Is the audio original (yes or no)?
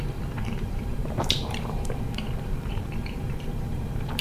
no